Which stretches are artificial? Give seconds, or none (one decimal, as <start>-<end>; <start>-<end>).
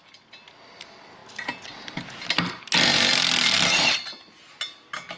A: none